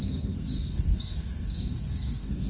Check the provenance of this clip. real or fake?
fake